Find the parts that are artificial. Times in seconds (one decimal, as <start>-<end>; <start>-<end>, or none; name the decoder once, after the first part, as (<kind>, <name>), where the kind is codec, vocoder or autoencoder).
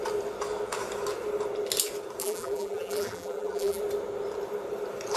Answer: 2.2-3.8 (vocoder, BigVGAN v2)